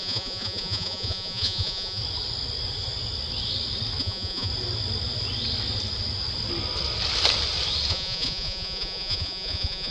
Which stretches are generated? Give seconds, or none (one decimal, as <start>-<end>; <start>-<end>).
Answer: 0.0-2.0; 4.0-4.5; 7.9-9.9